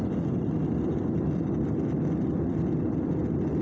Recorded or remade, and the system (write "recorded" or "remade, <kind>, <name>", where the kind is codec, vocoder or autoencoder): recorded